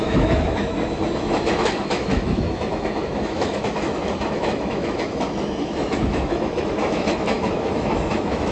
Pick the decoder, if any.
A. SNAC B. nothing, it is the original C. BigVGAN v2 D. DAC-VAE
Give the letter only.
D